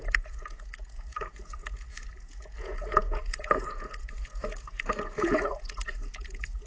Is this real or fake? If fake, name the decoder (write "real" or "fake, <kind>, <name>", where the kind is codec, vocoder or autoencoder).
fake, vocoder, Vocos